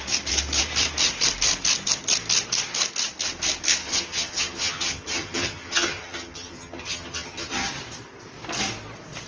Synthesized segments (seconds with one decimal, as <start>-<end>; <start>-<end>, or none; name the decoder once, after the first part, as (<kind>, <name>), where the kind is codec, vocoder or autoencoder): 3.8-7.7 (vocoder, HiFi-GAN)